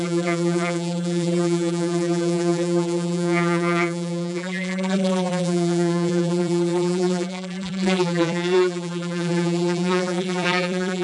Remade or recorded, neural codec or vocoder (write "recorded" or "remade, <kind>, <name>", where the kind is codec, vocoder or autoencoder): remade, vocoder, BigVGAN v2